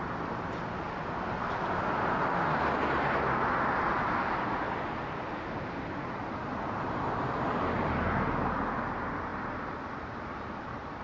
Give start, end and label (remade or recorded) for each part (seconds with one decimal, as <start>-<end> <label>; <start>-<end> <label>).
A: 0.0-9.3 recorded; 9.3-10.6 remade; 10.6-11.0 recorded